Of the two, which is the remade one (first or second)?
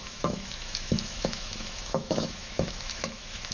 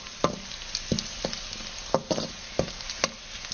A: first